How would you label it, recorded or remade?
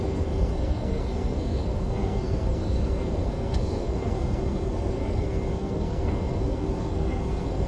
remade